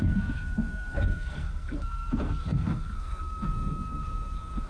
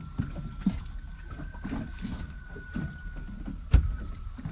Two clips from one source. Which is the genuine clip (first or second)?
second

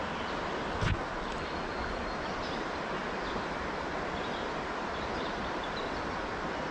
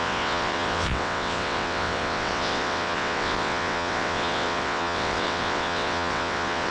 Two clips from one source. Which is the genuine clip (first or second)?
first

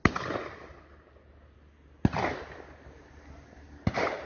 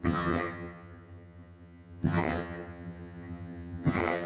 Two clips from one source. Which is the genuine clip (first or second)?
first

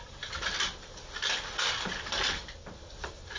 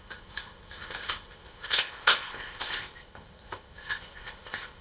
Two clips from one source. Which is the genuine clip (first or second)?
first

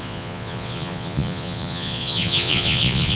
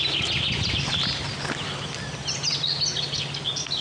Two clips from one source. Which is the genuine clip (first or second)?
second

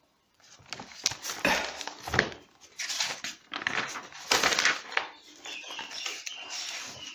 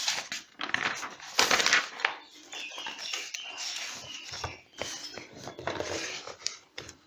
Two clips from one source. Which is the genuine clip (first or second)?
second